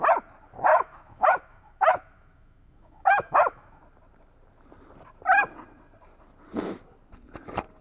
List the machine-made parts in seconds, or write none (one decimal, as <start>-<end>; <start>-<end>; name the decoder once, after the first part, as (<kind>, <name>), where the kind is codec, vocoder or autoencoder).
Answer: 0.7-3.8 (autoencoder, DAC-VAE)